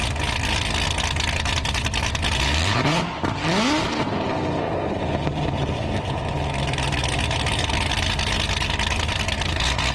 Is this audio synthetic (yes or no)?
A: no